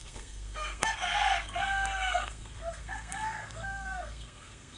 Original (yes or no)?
no